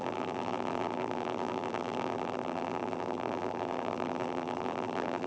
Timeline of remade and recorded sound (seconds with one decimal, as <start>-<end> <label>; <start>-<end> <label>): 0.0-5.3 remade